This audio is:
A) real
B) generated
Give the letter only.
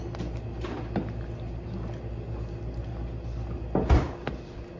A